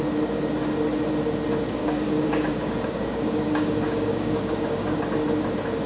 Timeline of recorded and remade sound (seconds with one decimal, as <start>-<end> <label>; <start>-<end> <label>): 0.0-1.8 recorded; 1.8-5.0 remade; 5.0-5.9 recorded